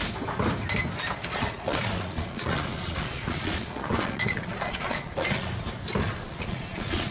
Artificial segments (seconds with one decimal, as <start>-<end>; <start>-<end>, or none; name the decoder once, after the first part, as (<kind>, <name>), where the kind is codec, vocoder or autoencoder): 1.2-5.5 (vocoder, Vocos); 6.0-7.1